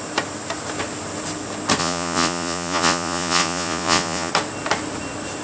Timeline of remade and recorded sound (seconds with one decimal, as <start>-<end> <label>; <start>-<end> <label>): 0.0-1.8 recorded; 1.8-4.3 remade; 4.3-5.4 recorded